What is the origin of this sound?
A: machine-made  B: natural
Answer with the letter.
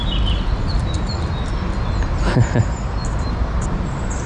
B